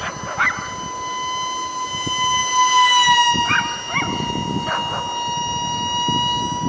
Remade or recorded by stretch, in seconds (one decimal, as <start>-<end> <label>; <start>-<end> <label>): 0.0-6.7 recorded